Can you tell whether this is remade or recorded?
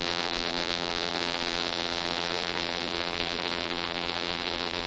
remade